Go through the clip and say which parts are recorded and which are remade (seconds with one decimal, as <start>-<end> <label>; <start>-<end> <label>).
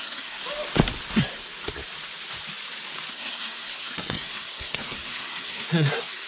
0.0-0.4 remade; 0.4-3.1 recorded; 3.1-6.3 remade